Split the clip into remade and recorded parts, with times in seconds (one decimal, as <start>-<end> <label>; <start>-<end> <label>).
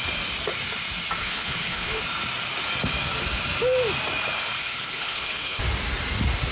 0.0-1.2 recorded; 1.2-2.0 remade; 2.0-4.6 recorded; 4.6-5.6 remade; 5.6-6.5 recorded